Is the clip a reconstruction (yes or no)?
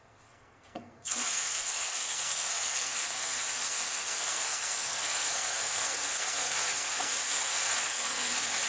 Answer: yes